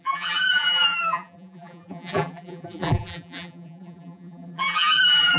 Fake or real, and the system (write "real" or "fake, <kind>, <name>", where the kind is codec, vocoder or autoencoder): fake, vocoder, BigVGAN v2